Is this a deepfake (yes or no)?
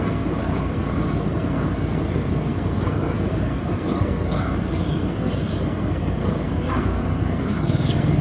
yes